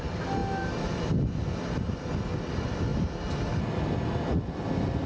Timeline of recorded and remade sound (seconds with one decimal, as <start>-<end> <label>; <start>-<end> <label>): 0.0-5.1 recorded